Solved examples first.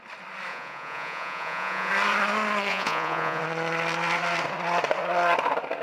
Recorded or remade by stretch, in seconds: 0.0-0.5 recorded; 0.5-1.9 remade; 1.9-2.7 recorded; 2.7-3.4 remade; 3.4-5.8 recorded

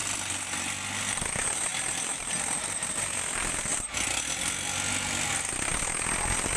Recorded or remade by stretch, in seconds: 0.0-6.6 recorded

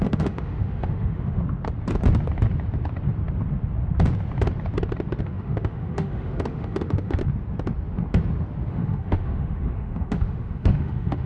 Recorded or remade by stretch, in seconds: 0.0-1.4 remade; 1.4-5.2 recorded; 5.2-7.2 remade; 7.2-8.7 recorded; 8.7-11.3 remade

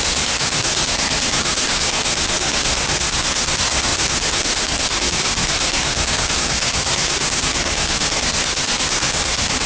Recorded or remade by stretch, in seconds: 0.0-9.7 remade

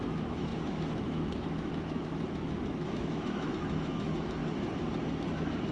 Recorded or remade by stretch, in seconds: 0.0-4.4 remade; 4.4-5.1 recorded; 5.1-5.7 remade